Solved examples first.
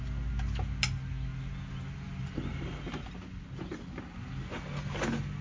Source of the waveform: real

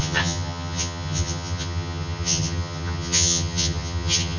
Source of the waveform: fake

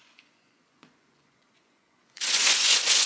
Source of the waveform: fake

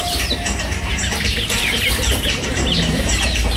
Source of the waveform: fake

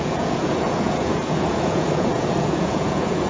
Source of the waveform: fake